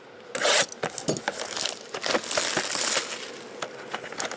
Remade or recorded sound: recorded